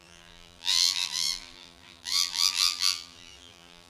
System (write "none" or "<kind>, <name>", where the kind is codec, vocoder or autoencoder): vocoder, BigVGAN v2